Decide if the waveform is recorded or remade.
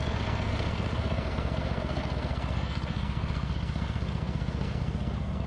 remade